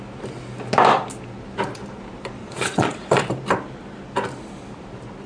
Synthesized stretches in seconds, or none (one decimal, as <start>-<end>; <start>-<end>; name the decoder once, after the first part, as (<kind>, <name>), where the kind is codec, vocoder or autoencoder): 2.4-3.2 (vocoder, Vocos)